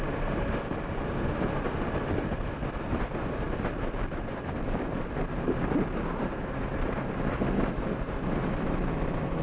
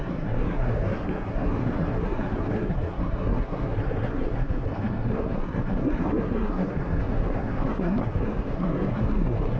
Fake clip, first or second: second